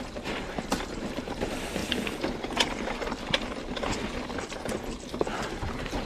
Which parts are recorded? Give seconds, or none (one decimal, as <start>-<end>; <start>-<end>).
1.8-5.5